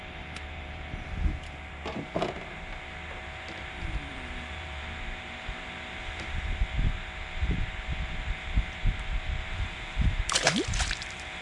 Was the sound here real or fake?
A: fake